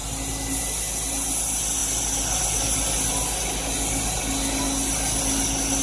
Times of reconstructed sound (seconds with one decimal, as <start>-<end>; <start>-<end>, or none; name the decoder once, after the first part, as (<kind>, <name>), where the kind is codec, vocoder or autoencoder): none